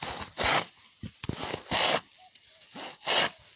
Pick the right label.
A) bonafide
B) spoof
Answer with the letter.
A